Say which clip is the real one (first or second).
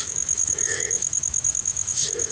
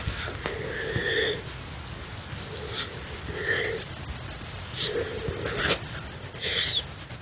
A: second